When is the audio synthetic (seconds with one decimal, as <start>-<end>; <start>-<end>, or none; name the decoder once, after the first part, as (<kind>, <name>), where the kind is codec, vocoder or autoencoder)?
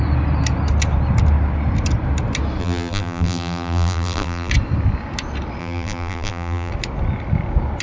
2.6-4.5 (vocoder, BigVGAN v2); 5.6-6.7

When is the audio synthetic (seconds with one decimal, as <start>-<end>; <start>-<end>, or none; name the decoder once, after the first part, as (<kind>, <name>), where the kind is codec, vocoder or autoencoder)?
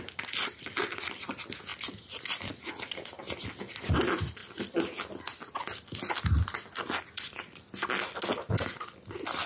none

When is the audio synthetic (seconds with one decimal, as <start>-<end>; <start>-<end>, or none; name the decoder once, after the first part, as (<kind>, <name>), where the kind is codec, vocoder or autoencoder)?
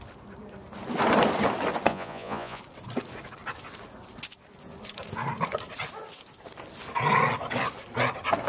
1.9-2.6 (vocoder, Vocos)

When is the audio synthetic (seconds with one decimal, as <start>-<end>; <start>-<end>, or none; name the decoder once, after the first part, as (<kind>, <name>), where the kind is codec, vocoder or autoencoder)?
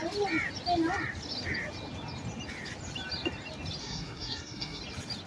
3.8-4.8 (codec, SNAC)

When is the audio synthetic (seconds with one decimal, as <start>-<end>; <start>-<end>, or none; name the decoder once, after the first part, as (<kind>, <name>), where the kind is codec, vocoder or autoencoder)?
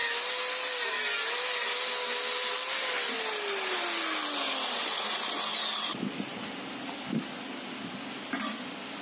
none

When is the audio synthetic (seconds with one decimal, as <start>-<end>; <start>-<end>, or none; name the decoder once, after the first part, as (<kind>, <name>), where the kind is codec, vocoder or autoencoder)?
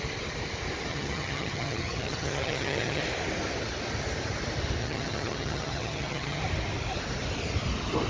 0.9-3.0 (vocoder, HiFi-GAN); 4.8-6.4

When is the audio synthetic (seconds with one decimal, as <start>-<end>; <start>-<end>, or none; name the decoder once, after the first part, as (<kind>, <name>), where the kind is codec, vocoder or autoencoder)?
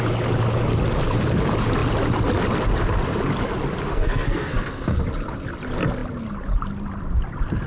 3.9-5.0 (codec, SNAC)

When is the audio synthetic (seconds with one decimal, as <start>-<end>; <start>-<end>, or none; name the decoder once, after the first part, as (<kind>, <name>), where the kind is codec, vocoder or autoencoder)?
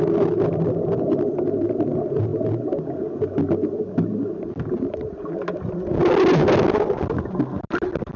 none